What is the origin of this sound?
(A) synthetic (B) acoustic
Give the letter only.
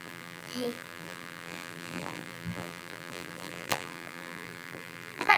A